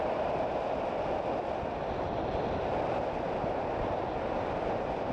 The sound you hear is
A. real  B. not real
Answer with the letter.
A